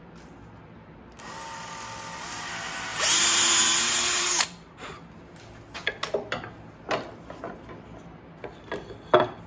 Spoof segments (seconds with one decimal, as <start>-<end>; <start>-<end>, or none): 2.9-5.1